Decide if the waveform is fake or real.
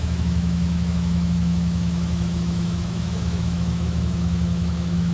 fake